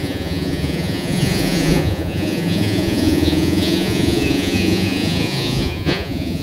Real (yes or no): no